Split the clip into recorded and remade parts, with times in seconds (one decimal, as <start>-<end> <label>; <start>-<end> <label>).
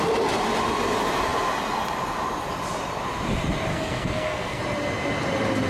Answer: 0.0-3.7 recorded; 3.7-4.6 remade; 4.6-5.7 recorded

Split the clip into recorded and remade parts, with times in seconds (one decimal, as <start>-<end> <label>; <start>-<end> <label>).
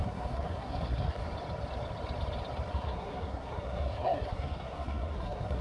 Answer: 0.0-1.2 remade; 1.2-2.7 recorded; 2.7-5.6 remade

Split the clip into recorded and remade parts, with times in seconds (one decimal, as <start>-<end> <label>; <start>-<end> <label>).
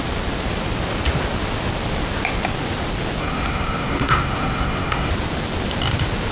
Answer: 0.0-3.2 recorded; 3.2-5.1 remade; 5.1-6.3 recorded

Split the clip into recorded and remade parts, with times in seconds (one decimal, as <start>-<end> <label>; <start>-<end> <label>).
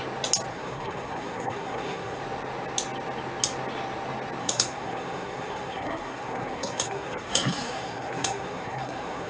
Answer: 0.0-0.5 recorded; 0.5-2.2 remade; 2.2-4.4 recorded; 4.4-9.3 remade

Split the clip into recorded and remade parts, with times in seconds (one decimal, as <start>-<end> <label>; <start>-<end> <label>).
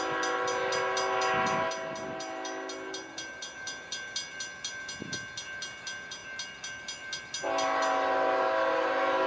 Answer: 0.0-9.3 recorded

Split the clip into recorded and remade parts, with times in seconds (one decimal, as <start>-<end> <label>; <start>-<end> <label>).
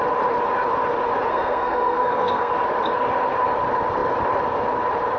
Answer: 0.0-1.3 recorded; 1.3-2.5 remade; 2.5-5.2 recorded